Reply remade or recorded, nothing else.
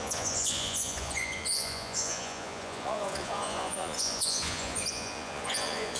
remade